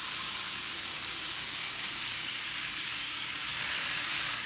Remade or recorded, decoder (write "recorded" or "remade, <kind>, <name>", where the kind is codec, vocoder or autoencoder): remade, codec, DAC